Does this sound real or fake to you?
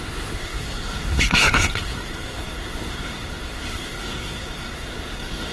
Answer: fake